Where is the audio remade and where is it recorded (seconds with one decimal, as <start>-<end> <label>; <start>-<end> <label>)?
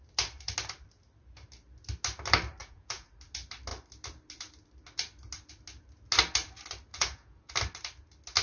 0.0-2.6 recorded; 2.6-3.1 remade; 3.1-6.9 recorded; 6.9-7.5 remade; 7.5-8.4 recorded